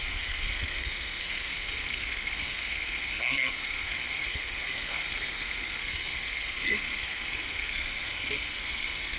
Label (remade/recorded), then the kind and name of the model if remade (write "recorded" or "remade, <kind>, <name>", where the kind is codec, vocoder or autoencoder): remade, codec, SNAC